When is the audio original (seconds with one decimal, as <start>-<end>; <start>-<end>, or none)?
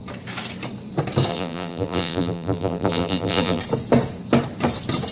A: 0.0-1.3; 3.6-5.1